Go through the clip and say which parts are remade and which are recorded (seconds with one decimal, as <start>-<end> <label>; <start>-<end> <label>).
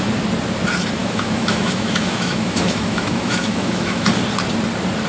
0.0-1.0 recorded; 1.0-4.1 remade; 4.1-5.1 recorded